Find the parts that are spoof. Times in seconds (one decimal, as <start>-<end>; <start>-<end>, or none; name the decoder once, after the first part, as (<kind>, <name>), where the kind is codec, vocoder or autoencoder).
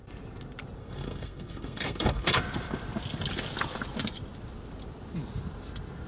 0.8-2.4 (codec, SNAC)